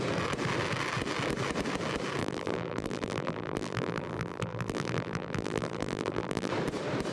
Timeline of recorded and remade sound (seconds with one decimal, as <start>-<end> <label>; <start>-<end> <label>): 0.0-2.2 recorded; 2.2-6.5 remade; 6.5-7.1 recorded